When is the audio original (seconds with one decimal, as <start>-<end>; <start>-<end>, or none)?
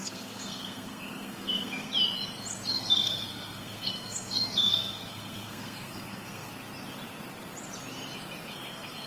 1.9-2.7; 6.5-8.5